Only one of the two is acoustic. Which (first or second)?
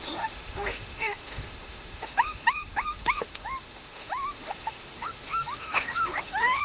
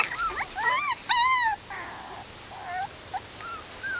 second